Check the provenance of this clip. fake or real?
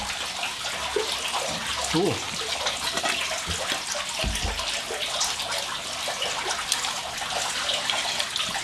real